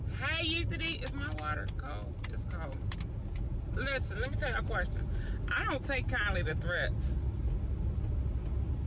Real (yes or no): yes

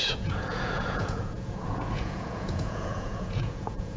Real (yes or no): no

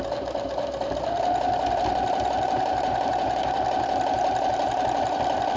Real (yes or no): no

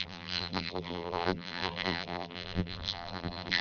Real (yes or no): no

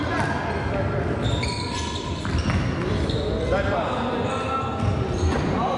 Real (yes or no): yes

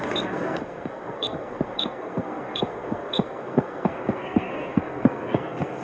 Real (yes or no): no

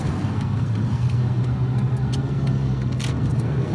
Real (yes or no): no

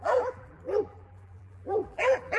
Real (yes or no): no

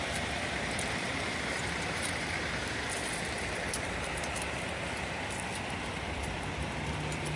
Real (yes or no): no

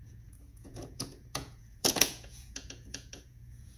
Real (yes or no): no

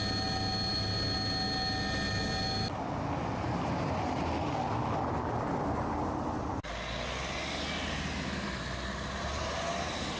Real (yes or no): yes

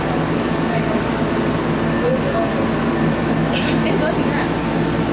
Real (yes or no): yes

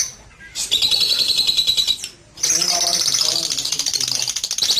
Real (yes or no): yes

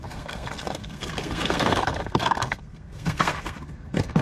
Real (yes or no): no